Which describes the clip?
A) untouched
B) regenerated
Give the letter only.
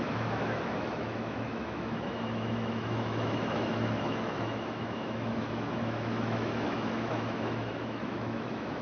B